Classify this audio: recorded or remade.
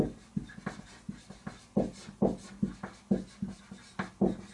recorded